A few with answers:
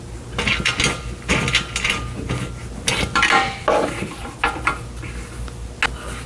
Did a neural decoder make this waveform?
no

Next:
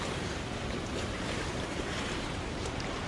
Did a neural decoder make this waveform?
yes